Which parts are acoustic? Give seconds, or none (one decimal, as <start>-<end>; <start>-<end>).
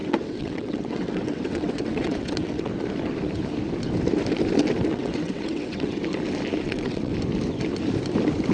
2.7-4.9; 6.0-6.6; 7.1-8.5